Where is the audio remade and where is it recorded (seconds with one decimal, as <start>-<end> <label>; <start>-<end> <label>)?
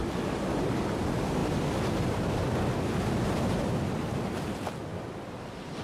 0.0-0.5 remade; 0.5-5.8 recorded